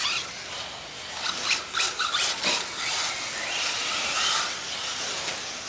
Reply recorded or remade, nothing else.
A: recorded